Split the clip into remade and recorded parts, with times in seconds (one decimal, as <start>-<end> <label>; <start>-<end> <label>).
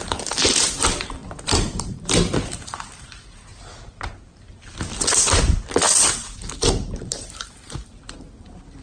0.0-4.3 remade; 4.3-7.2 recorded; 7.2-8.8 remade